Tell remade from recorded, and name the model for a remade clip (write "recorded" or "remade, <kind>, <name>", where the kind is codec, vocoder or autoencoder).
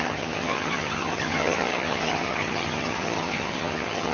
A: remade, vocoder, HiFi-GAN